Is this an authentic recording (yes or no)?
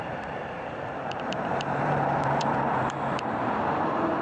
no